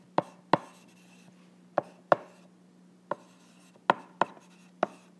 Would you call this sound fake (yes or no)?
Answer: no